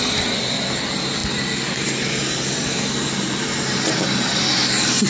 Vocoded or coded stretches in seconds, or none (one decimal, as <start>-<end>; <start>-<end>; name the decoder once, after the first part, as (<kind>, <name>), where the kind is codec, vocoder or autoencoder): none